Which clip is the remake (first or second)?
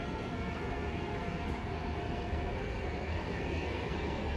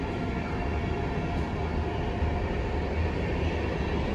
first